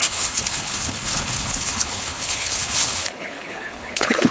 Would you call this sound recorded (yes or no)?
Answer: no